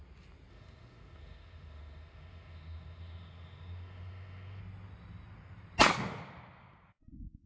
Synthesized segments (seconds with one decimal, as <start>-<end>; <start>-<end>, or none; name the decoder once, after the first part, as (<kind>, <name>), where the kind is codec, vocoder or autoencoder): 0.5-4.6 (autoencoder, DAC-VAE)